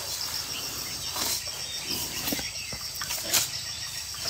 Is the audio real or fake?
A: fake